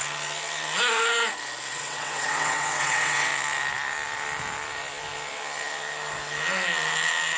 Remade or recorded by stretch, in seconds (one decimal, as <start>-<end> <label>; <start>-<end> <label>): 0.0-1.7 recorded; 1.7-3.3 remade; 3.3-7.4 recorded